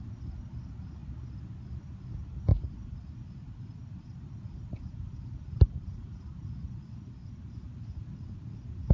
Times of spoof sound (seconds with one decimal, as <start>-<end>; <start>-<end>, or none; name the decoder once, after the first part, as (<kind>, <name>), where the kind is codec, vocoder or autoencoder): 2.5-7.5 (vocoder, BigVGAN v2)